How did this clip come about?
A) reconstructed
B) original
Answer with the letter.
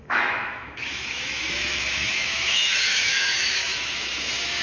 A